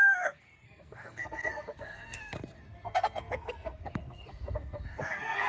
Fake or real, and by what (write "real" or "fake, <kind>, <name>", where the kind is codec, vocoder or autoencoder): fake, codec, SNAC